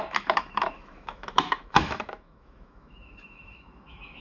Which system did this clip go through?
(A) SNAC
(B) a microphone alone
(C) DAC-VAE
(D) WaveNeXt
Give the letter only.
C